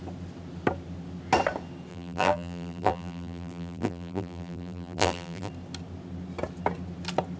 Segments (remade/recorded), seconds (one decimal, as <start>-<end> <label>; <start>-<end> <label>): 0.0-1.9 recorded; 1.9-5.5 remade; 5.5-7.4 recorded